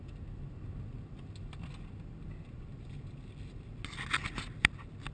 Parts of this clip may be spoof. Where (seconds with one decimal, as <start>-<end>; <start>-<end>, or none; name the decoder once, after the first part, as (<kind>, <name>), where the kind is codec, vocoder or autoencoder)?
none